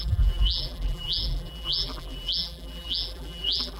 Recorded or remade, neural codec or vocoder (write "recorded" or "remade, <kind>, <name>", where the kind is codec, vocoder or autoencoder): remade, vocoder, BigVGAN v2